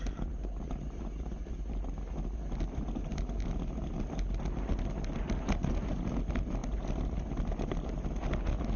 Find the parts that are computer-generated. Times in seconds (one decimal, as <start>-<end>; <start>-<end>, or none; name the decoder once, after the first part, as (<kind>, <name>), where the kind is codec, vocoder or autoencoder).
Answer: none

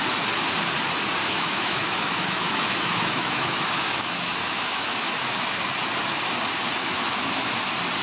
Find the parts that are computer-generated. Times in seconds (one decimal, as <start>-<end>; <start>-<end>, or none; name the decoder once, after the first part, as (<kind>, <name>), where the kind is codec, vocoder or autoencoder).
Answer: 1.2-5.3 (autoencoder, DAC-VAE); 6.8-7.5

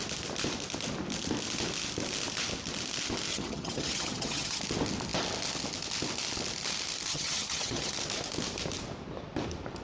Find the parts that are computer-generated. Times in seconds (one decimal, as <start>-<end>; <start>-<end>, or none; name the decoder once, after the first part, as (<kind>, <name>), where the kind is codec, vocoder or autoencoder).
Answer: 3.3-4.6 (vocoder, HiFi-GAN); 7.1-7.9

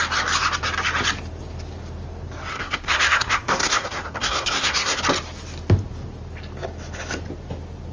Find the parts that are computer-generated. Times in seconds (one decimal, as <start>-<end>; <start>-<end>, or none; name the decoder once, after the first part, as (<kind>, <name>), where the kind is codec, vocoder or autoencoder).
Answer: 2.5-5.0 (codec, SNAC)

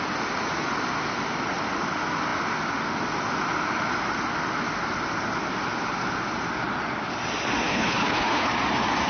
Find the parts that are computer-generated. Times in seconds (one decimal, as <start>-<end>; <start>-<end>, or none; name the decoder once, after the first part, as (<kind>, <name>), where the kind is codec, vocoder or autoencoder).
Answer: 7.7-8.5 (codec, HILCodec)

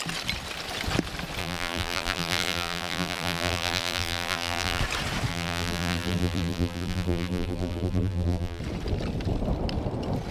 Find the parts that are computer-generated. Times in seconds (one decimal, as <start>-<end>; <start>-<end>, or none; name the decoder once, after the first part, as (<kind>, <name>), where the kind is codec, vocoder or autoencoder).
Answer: 1.4-4.8 (vocoder, BigVGAN v2); 5.3-8.6

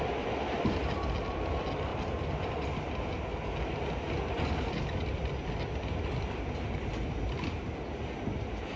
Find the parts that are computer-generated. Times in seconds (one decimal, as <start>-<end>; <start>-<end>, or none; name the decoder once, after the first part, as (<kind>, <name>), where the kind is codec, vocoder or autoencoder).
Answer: none

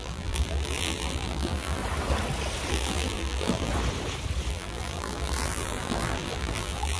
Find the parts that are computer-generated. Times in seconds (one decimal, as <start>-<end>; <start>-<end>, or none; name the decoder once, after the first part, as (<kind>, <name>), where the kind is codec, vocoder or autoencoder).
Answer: 0.0-1.8 (vocoder, BigVGAN v2); 2.7-3.7; 4.5-7.0